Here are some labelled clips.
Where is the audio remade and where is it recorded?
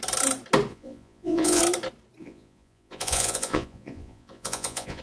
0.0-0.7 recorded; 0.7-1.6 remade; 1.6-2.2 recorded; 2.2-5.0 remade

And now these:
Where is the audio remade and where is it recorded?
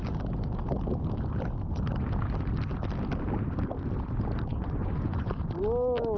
0.0-4.5 recorded; 4.5-5.4 remade; 5.4-6.2 recorded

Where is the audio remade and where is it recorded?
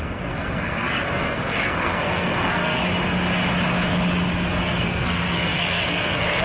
0.0-2.8 remade; 2.8-4.6 recorded; 4.6-6.4 remade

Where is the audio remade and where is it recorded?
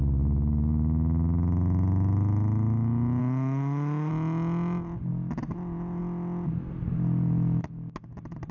0.0-3.2 recorded; 3.2-4.1 remade; 4.1-8.5 recorded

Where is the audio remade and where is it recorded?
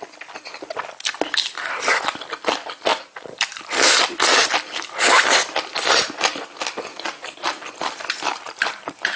0.0-2.9 recorded; 2.9-3.6 remade; 3.6-8.3 recorded; 8.3-9.2 remade